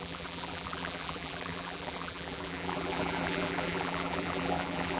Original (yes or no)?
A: no